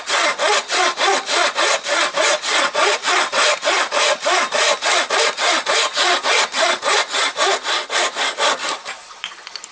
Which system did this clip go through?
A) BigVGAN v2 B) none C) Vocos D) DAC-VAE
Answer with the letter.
A